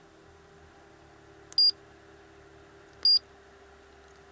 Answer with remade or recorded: recorded